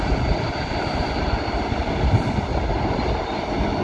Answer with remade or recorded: recorded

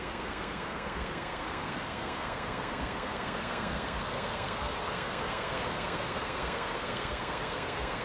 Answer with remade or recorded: remade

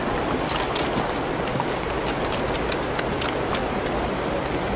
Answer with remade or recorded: recorded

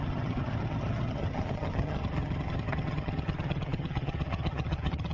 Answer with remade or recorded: remade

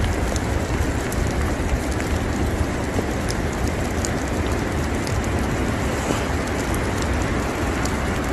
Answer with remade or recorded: recorded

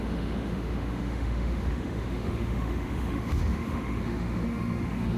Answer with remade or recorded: remade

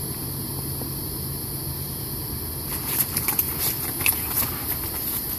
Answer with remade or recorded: recorded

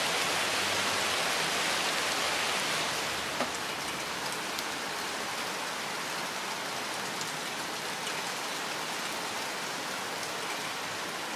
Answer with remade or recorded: recorded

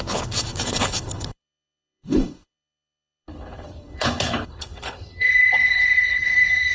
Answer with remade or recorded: remade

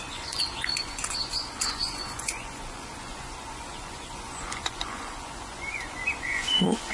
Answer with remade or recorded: remade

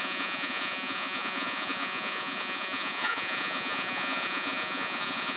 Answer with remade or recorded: remade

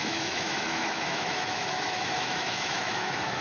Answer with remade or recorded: remade